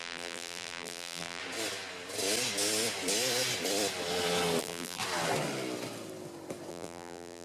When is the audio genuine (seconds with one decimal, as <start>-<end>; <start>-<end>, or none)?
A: 1.4-4.6; 5.0-6.7